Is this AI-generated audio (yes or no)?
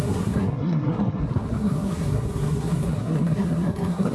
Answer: yes